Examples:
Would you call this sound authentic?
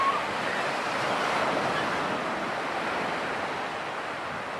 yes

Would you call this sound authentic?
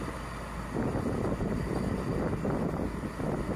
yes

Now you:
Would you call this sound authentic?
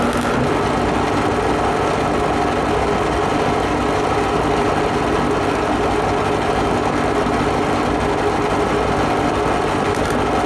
yes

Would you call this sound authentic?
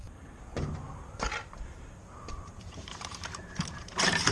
no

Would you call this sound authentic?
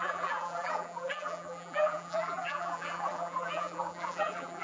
no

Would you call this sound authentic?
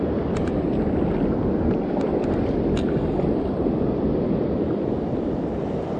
yes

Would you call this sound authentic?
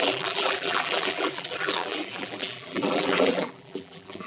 no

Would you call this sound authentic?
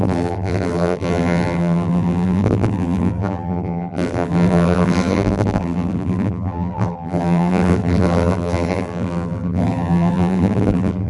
no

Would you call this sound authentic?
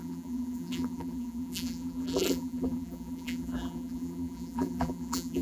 no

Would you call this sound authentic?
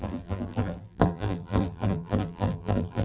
no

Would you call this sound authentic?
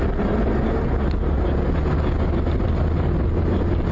yes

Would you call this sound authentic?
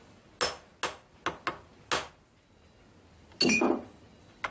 yes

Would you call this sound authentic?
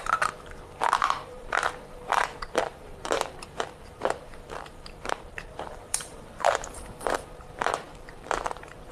no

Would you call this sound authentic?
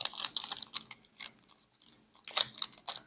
yes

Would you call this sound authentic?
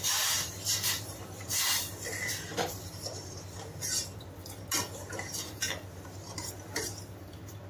no